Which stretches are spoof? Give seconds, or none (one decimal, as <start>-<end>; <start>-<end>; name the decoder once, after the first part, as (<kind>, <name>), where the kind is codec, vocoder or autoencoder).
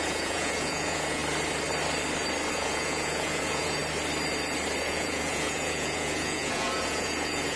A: 0.0-1.2 (vocoder, Vocos); 2.5-3.8; 4.8-7.6